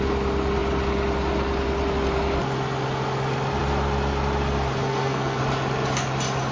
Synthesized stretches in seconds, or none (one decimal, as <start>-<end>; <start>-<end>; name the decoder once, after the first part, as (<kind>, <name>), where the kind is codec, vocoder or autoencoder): 4.8-5.4 (codec, SNAC)